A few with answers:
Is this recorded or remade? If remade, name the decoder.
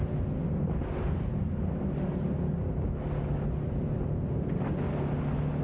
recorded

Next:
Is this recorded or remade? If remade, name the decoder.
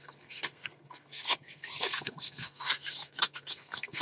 remade, codec, SNAC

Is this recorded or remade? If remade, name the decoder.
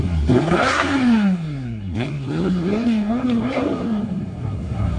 remade, codec, SNAC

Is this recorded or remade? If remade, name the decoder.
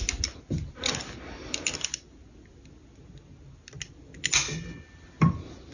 recorded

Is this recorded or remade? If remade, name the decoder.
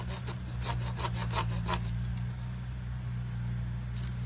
recorded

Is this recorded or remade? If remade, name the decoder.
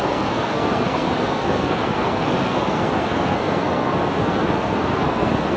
remade, codec, SNAC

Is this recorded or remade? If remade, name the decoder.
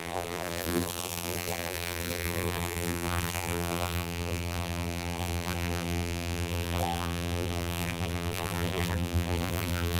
remade, vocoder, BigVGAN v2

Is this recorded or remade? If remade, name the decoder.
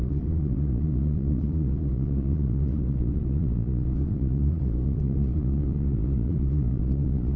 remade, vocoder, Vocos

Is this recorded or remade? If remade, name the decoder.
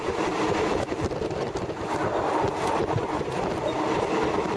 remade, vocoder, BigVGAN v2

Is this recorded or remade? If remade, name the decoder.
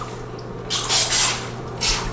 recorded